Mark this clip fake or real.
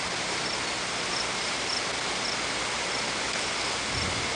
real